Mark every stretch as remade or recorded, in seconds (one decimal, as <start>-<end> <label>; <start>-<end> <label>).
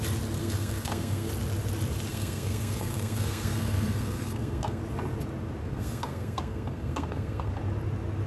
0.0-0.4 recorded; 0.4-1.3 remade; 1.3-2.1 recorded; 2.1-4.8 remade; 4.8-5.6 recorded; 5.6-7.5 remade; 7.5-8.3 recorded